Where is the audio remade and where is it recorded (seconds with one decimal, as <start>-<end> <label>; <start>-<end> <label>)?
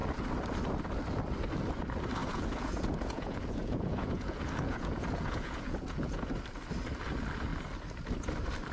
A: 0.0-2.2 recorded; 2.2-6.3 remade; 6.3-8.7 recorded